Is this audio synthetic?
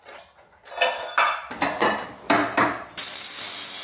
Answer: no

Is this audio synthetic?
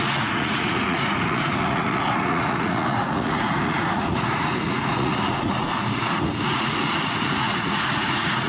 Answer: yes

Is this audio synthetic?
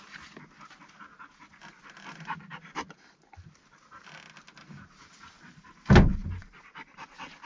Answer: no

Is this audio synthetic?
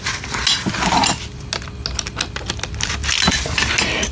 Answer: no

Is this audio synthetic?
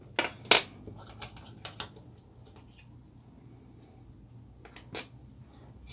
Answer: no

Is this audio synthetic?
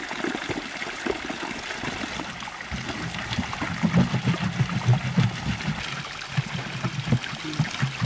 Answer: no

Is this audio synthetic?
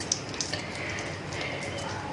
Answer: no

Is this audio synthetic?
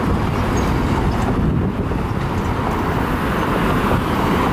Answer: no